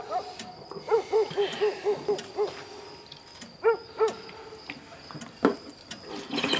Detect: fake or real real